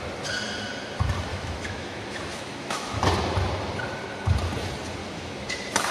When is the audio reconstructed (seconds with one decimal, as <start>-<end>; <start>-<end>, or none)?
1.3-3.0; 5.0-5.5